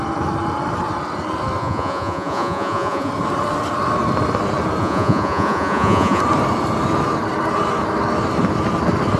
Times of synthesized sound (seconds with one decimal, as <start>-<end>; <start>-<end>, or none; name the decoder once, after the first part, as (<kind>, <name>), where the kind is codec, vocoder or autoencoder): 1.6-3.1 (vocoder, Vocos); 4.8-6.2